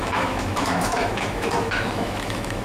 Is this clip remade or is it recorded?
remade